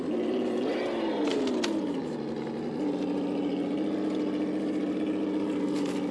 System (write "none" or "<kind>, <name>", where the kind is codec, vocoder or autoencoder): none